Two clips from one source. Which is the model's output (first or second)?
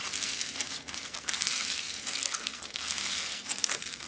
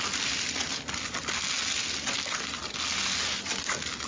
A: first